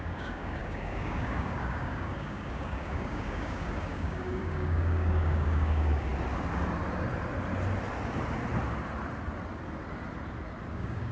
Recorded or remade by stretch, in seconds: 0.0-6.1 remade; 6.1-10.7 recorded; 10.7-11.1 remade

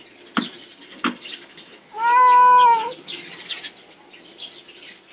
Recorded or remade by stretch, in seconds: 0.0-0.7 recorded; 0.7-1.8 remade; 1.8-5.1 recorded

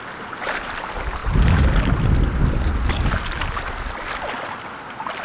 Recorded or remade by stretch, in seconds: 0.0-5.2 recorded

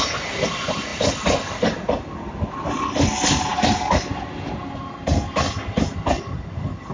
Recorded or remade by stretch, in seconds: 0.0-6.9 recorded

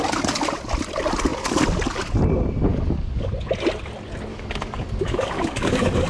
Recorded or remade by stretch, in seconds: 0.0-2.7 recorded; 2.7-3.3 remade; 3.3-4.3 recorded; 4.3-6.1 remade

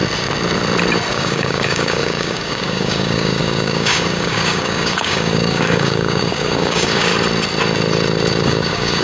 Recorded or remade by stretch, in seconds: 0.0-1.1 recorded; 1.1-7.1 remade; 7.1-8.4 recorded; 8.4-9.0 remade

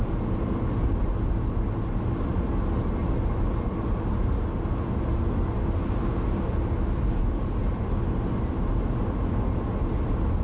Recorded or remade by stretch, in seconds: 0.0-10.4 recorded

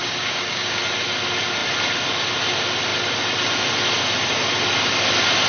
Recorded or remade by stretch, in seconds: 0.0-0.8 remade; 0.8-5.5 recorded